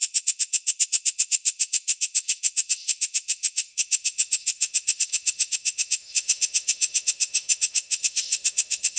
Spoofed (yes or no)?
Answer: yes